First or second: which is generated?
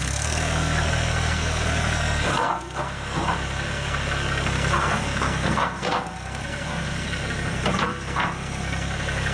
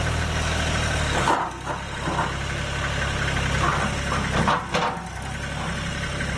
first